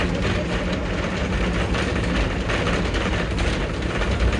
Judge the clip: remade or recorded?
recorded